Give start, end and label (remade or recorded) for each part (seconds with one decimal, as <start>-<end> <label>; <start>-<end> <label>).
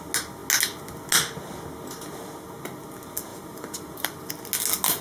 0.0-3.3 recorded; 3.3-4.3 remade; 4.3-5.0 recorded